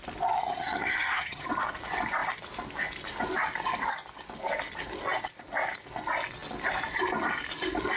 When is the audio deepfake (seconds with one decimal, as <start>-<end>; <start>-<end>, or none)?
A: 0.4-1.5